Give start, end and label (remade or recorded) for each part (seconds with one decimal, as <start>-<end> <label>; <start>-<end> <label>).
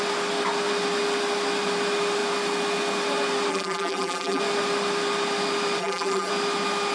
0.0-3.5 recorded; 3.5-4.4 remade; 4.4-5.8 recorded; 5.8-6.3 remade; 6.3-6.9 recorded